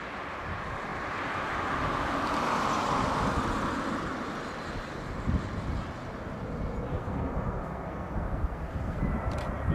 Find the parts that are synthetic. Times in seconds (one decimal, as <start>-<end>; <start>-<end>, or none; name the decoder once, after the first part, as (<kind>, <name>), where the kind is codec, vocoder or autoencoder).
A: 6.9-9.0 (codec, SNAC)